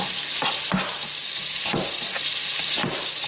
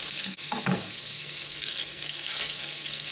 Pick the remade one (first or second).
second